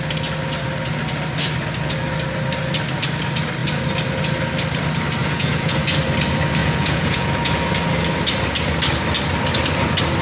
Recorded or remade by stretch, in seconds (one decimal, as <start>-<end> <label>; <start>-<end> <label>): 0.0-5.2 recorded; 5.2-5.8 remade; 5.8-6.6 recorded; 6.6-7.5 remade; 7.5-10.2 recorded